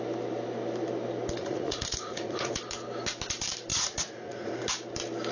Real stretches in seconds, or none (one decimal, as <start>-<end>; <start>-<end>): 0.0-1.4; 2.5-3.7; 4.5-5.3